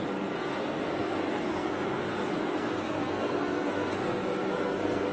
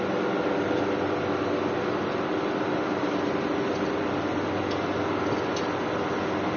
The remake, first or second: first